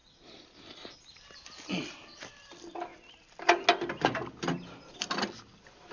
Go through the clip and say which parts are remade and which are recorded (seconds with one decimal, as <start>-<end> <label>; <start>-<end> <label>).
0.0-5.9 recorded